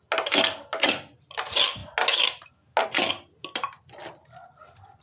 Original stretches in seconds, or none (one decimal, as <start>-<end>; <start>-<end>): 0.0-5.0